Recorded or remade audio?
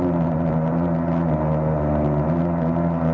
recorded